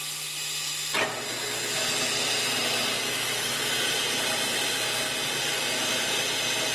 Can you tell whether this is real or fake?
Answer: real